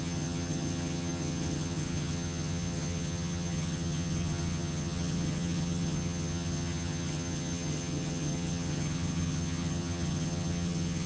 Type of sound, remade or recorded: remade